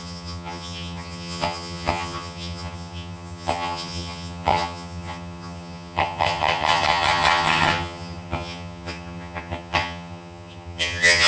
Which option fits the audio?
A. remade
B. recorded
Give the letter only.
A